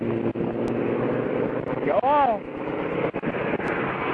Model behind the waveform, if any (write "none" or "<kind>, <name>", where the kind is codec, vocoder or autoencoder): none